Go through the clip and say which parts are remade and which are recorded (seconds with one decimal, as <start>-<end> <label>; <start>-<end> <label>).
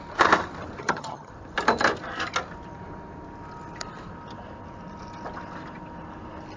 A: 0.0-0.8 recorded; 0.8-1.3 remade; 1.3-6.6 recorded